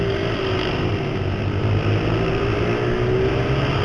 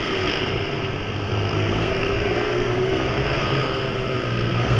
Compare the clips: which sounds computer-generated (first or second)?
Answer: second